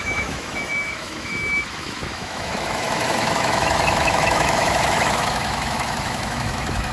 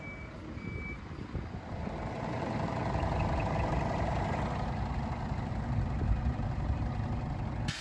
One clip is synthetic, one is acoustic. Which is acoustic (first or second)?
second